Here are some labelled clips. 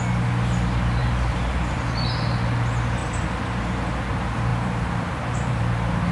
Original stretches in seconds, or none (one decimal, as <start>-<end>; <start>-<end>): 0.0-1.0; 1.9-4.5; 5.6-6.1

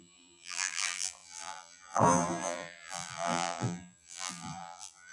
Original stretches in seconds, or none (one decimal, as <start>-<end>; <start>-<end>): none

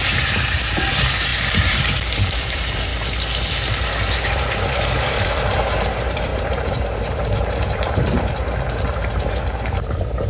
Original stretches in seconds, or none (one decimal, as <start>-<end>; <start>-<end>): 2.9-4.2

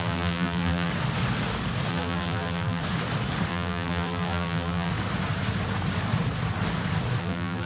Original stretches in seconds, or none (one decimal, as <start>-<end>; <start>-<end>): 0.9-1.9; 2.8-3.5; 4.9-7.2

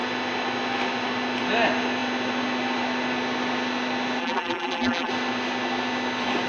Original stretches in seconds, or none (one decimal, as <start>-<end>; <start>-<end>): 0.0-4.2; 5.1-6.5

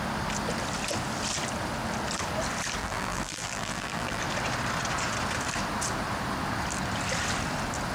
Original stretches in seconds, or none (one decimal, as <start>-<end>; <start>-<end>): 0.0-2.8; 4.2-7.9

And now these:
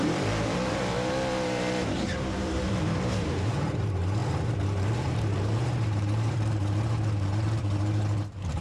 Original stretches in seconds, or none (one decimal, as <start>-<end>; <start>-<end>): none